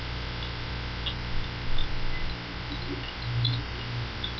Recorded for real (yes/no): yes